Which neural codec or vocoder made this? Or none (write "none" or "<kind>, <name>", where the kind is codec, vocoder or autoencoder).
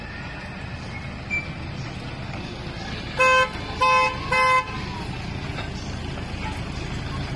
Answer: none